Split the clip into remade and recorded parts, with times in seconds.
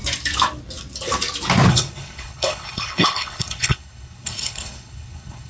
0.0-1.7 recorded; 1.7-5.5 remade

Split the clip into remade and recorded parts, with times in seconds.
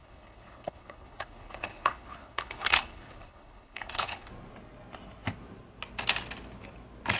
0.0-4.3 remade; 4.3-7.2 recorded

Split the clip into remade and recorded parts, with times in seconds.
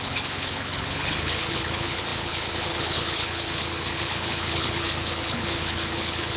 0.0-6.4 remade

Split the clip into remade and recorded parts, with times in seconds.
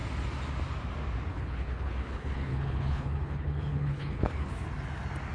0.0-1.3 recorded; 1.3-4.5 remade; 4.5-5.3 recorded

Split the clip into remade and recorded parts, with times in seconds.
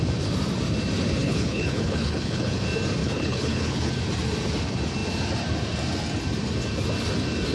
0.0-1.2 recorded; 1.2-2.6 remade; 2.6-3.0 recorded; 3.0-3.9 remade; 3.9-7.5 recorded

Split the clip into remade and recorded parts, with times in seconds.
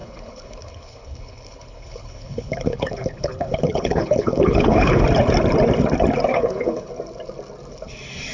0.0-5.0 remade; 5.0-6.3 recorded; 6.3-6.9 remade; 6.9-8.3 recorded